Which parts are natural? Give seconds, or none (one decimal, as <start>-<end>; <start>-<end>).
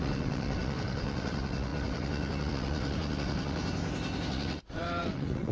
3.6-4.3